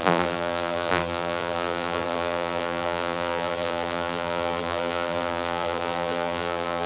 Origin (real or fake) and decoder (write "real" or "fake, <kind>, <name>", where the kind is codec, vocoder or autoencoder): fake, vocoder, BigVGAN v2